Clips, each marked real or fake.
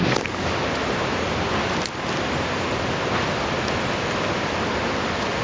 real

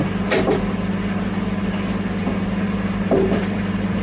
real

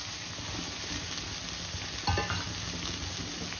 real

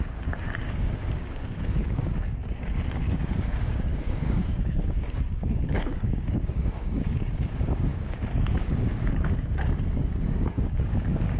fake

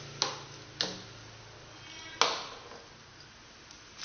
real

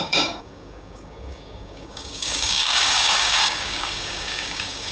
fake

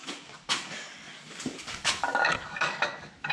fake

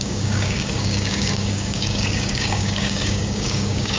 fake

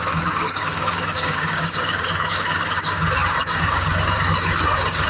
fake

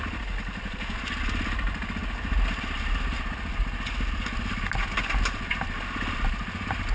real